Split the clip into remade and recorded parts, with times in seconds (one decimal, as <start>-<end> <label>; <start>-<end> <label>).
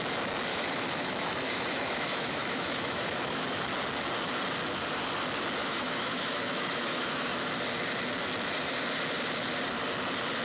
0.0-0.5 recorded; 0.5-3.6 remade; 3.6-5.6 recorded; 5.6-7.3 remade; 7.3-10.4 recorded